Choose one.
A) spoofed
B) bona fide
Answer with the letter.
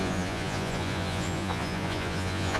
A